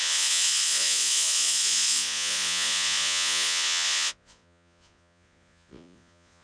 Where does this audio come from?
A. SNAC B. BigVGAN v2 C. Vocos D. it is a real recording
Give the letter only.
C